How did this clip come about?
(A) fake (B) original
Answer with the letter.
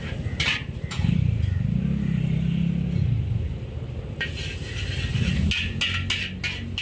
B